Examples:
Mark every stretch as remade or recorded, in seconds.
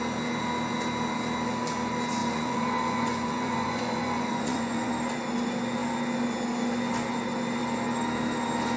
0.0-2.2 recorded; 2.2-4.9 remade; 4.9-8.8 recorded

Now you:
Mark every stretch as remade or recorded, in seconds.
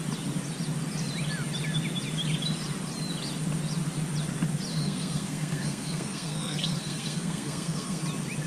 0.0-4.7 recorded; 4.7-8.0 remade; 8.0-8.5 recorded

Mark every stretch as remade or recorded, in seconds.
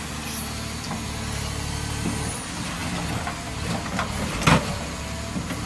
0.0-5.7 recorded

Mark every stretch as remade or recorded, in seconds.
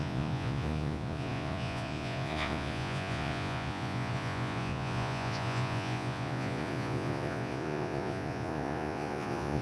0.0-9.6 remade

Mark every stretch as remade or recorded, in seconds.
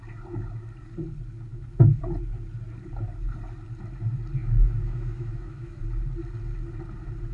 0.0-1.5 recorded; 1.5-2.0 remade; 2.0-4.4 recorded; 4.4-5.8 remade; 5.8-7.3 recorded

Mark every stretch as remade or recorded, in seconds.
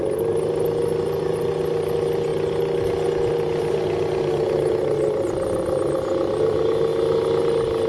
0.0-7.9 recorded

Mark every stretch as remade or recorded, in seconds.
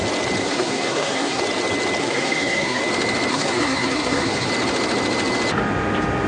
0.0-0.4 recorded; 0.4-1.4 remade; 1.4-2.0 recorded; 2.0-2.8 remade; 2.8-3.3 recorded; 3.3-4.5 remade; 4.5-6.3 recorded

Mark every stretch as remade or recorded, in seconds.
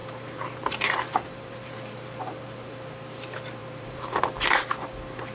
0.0-2.9 remade; 2.9-3.6 recorded; 3.6-4.2 remade; 4.2-5.3 recorded